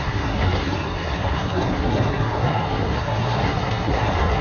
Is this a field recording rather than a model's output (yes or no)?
no